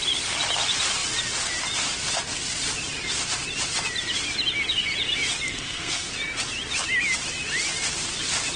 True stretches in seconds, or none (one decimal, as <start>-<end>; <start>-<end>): 0.0-5.5; 6.1-8.6

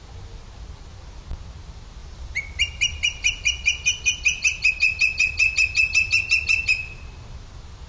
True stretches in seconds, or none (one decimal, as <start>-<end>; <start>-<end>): 0.0-2.0; 4.7-7.9